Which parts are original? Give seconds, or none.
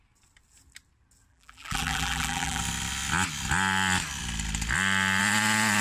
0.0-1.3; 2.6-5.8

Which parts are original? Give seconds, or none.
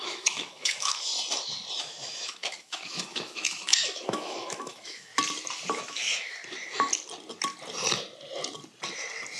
1.1-1.8; 5.1-5.7; 6.4-9.4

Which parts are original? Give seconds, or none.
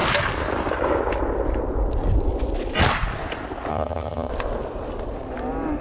0.0-3.7; 4.3-5.8